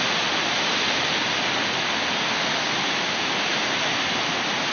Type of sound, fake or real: real